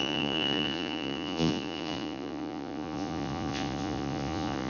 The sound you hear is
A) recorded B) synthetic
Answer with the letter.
B